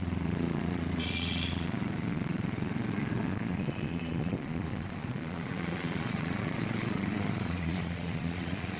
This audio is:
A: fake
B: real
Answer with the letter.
A